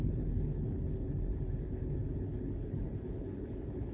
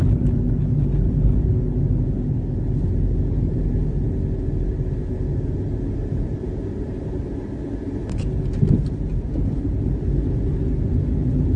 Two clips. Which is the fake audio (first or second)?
first